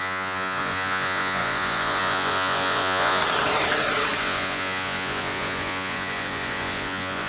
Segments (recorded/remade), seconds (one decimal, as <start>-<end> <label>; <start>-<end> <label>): 0.0-3.2 remade; 3.2-4.2 recorded; 4.2-7.3 remade